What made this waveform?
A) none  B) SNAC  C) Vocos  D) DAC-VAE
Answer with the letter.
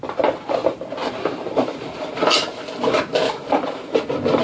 A